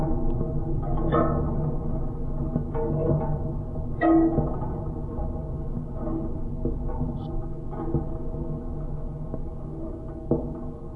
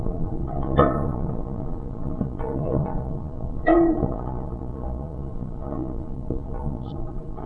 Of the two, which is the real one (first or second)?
first